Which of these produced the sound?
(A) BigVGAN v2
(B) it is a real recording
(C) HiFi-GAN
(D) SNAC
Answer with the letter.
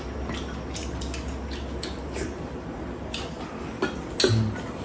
B